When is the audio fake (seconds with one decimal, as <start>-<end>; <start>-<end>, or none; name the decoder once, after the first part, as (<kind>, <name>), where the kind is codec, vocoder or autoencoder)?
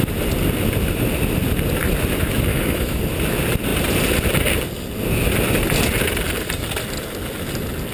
2.5-3.0 (autoencoder, DAC-VAE)